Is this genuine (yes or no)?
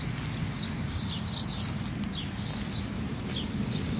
yes